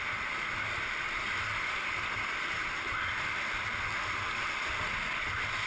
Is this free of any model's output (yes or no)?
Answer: yes